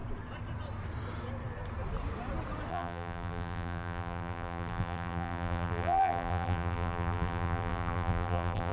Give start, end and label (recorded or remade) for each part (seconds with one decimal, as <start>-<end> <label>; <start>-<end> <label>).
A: 0.0-2.7 recorded; 2.7-8.7 remade